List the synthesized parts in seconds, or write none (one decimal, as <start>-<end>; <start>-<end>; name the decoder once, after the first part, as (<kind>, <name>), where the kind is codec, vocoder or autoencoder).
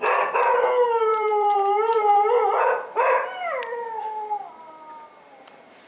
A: 0.0-5.9 (vocoder, BigVGAN v2)